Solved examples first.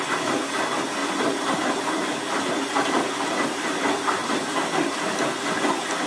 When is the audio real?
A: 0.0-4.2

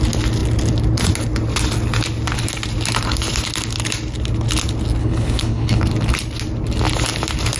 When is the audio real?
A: 0.0-5.0; 5.8-7.6

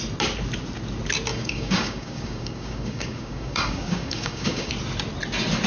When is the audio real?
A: 0.0-1.3; 4.7-5.7

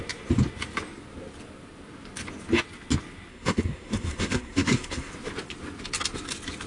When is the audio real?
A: 0.0-3.3; 5.1-6.7

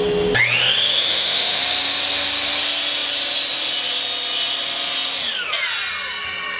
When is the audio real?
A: 0.0-0.9; 1.6-6.6

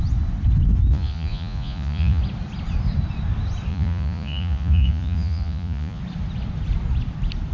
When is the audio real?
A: 0.0-0.9; 2.2-3.7; 6.0-7.5